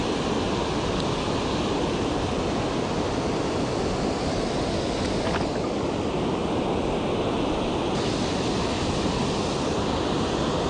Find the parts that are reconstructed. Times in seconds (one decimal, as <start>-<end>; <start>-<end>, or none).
none